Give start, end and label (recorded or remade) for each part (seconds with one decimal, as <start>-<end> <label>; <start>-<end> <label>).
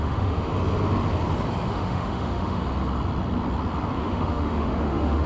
0.0-0.5 remade; 0.5-1.7 recorded; 1.7-2.6 remade; 2.6-4.0 recorded; 4.0-5.3 remade